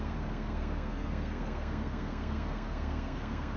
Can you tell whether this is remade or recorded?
remade